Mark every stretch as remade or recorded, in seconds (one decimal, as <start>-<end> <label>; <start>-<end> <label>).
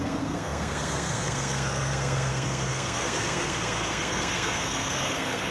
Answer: 0.0-5.5 remade